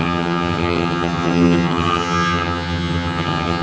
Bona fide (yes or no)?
no